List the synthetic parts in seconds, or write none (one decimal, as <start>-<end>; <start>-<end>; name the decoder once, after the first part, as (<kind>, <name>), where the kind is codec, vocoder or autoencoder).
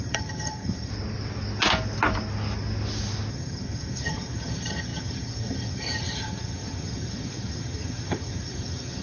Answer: 0.0-0.9 (vocoder, HiFi-GAN); 3.3-9.0